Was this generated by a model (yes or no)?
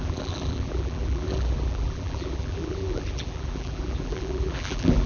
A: yes